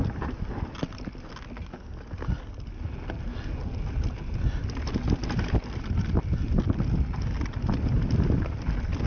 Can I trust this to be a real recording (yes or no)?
yes